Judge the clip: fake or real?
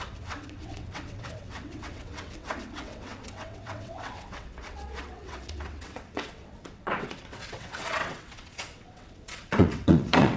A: fake